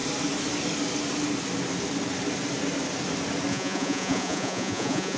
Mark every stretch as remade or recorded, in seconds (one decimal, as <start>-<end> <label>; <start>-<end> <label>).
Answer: 0.0-3.5 recorded; 3.5-5.2 remade